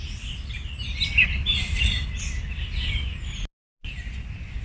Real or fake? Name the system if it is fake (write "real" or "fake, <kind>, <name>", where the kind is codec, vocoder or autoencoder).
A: real